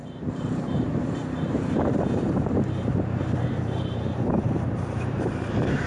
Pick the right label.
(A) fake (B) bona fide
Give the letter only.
A